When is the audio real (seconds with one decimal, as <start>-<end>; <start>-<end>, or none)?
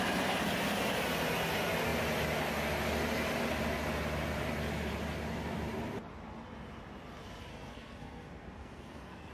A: 0.0-7.5